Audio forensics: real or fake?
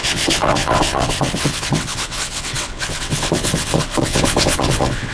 fake